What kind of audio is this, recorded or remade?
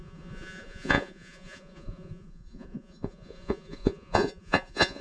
remade